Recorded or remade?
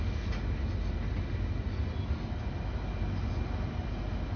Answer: recorded